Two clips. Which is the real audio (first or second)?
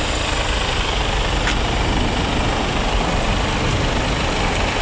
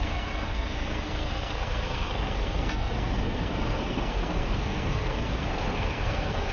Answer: first